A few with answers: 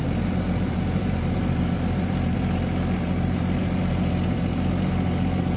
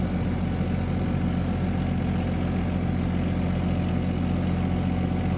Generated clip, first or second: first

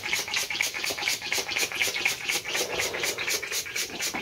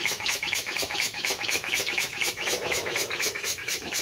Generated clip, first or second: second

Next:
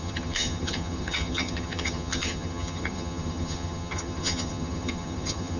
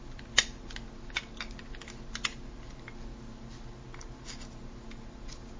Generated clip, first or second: first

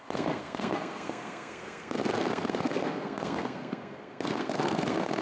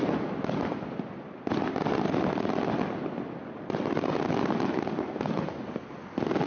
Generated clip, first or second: first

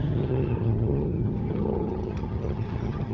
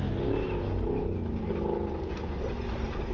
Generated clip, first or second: first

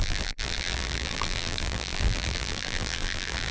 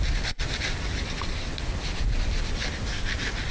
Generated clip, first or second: first